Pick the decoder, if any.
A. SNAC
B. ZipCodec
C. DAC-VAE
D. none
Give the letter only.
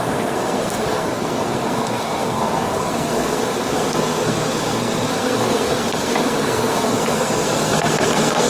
A